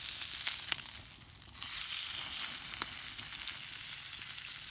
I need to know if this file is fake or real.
real